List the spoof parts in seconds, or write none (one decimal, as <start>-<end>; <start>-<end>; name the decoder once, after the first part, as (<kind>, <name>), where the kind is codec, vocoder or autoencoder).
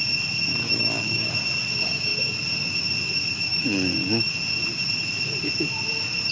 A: 0.5-1.3 (autoencoder, DAC-VAE); 3.5-4.3